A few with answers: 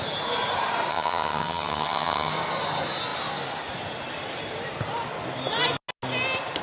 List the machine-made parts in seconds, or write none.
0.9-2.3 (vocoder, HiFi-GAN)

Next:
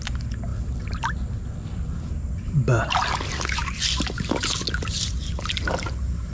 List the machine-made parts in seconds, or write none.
none

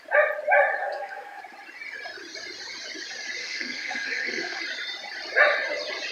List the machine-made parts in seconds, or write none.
0.8-1.4 (codec, SNAC); 3.4-4.6

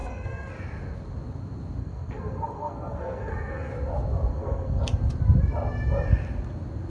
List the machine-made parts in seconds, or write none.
0.0-0.5 (codec, SNAC); 1.8-3.7; 4.3-4.8

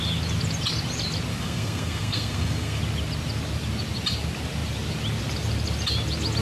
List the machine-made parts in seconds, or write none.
1.3-2.8 (codec, SNAC)

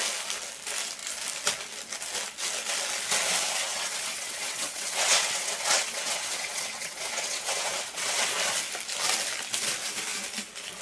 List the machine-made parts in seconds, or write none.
3.6-8.3 (vocoder, WaveNeXt)

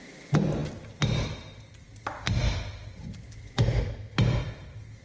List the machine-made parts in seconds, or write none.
none